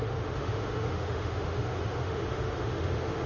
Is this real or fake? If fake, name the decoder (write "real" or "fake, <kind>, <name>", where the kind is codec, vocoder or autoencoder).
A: fake, autoencoder, DAC-VAE